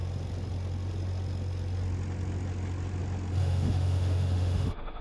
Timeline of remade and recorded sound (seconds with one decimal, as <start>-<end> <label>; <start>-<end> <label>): 0.0-3.4 recorded; 3.4-5.0 remade